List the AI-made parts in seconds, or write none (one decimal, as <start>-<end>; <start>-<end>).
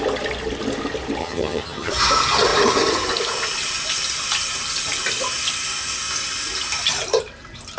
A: 1.2-1.9